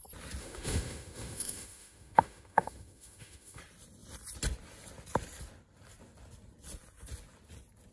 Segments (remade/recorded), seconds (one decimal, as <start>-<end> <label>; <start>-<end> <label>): 0.0-0.4 recorded; 0.4-3.6 remade; 3.6-7.9 recorded